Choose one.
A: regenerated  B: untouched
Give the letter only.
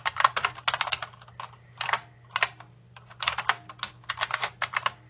B